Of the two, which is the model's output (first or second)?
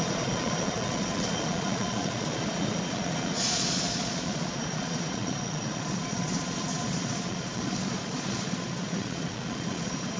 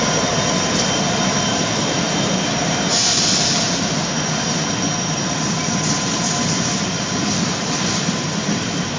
first